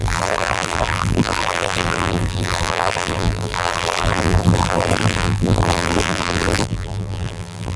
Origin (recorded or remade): remade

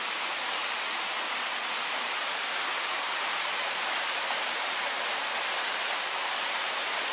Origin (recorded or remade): remade